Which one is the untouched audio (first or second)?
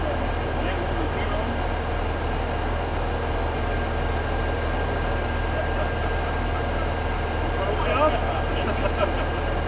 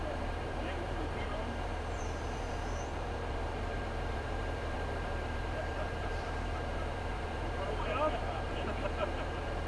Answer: first